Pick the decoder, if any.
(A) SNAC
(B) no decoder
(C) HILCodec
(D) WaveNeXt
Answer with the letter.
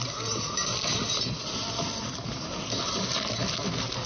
B